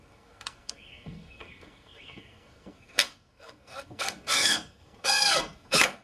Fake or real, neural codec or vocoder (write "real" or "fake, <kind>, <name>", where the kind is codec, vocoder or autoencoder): fake, codec, SNAC